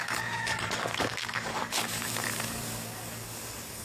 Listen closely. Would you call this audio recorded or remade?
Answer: remade